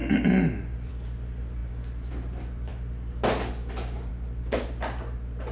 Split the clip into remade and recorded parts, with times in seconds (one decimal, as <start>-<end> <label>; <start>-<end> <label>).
0.0-5.5 recorded